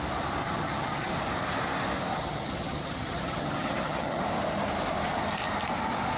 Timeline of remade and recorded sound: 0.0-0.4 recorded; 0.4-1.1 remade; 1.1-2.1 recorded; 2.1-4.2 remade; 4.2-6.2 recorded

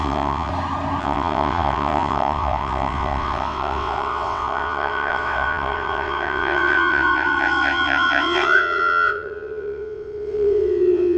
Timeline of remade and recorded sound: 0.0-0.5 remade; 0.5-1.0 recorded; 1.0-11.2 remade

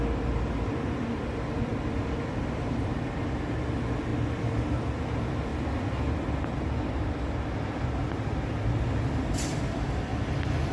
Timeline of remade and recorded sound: 0.0-10.1 remade; 10.1-10.7 recorded